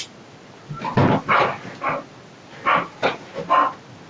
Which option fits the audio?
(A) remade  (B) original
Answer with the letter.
B